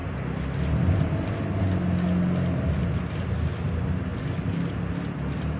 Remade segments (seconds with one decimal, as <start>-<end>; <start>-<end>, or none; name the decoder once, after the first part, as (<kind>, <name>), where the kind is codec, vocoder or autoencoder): none